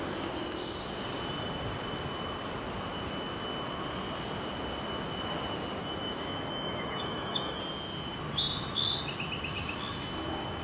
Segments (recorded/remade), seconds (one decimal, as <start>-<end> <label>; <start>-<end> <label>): 0.0-5.8 recorded; 5.8-7.6 remade; 7.6-10.6 recorded